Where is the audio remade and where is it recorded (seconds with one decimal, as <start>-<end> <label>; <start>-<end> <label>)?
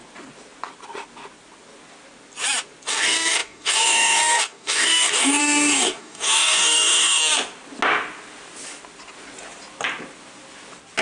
0.0-2.9 recorded; 2.9-7.2 remade; 7.2-11.0 recorded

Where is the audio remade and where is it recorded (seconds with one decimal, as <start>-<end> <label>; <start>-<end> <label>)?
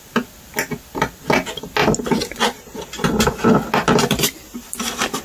0.0-5.2 recorded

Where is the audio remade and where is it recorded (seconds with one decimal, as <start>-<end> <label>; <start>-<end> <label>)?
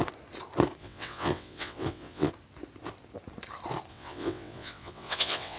0.0-0.8 recorded; 0.8-2.3 remade; 2.3-3.9 recorded; 3.9-5.6 remade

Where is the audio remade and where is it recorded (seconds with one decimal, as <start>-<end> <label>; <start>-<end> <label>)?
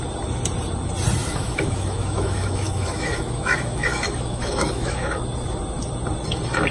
0.0-1.2 recorded; 1.2-5.2 remade; 5.2-6.7 recorded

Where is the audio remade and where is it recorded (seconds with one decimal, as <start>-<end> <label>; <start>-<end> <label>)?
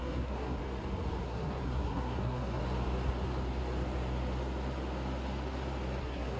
0.0-0.6 remade; 0.6-1.2 recorded; 1.2-2.6 remade; 2.6-6.0 recorded; 6.0-6.4 remade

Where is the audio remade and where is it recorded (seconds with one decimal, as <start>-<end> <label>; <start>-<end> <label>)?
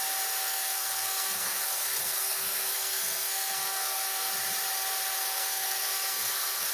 0.0-0.4 recorded; 0.4-4.3 remade; 4.3-5.1 recorded; 5.1-6.7 remade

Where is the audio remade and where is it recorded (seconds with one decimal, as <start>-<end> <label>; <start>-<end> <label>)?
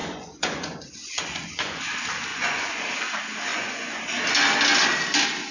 0.0-1.8 remade; 1.8-2.3 recorded; 2.3-2.8 remade; 2.8-3.5 recorded; 3.5-4.0 remade; 4.0-5.5 recorded